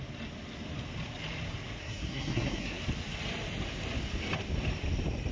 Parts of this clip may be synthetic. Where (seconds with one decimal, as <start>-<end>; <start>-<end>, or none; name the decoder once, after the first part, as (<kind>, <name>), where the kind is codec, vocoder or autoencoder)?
1.8-2.8 (codec, SNAC)